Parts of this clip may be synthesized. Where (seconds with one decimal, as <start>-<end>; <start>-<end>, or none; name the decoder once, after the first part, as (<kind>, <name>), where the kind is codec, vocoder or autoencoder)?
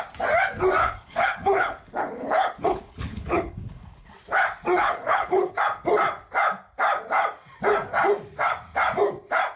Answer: 0.8-4.1 (codec, HILCodec); 4.8-5.6